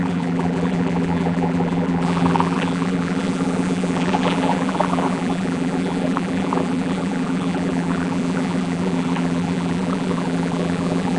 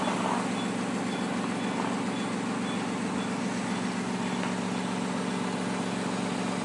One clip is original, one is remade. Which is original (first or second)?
second